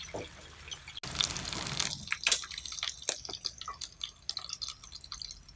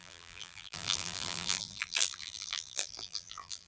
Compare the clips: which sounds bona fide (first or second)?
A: first